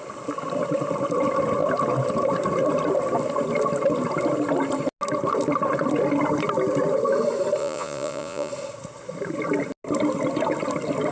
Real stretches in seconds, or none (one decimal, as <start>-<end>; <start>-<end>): 0.0-7.6; 8.5-11.1